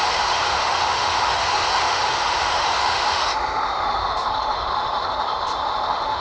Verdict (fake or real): fake